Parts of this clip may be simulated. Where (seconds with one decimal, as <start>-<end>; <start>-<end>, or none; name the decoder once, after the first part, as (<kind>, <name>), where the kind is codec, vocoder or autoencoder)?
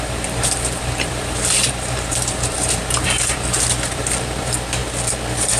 0.0-4.8 (vocoder, BigVGAN v2)